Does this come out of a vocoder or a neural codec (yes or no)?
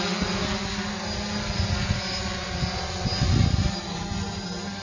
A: no